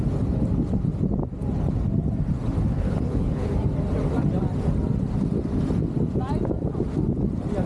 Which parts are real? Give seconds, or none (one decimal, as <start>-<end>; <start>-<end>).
0.0-2.7; 3.5-7.7